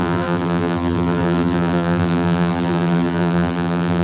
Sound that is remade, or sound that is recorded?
remade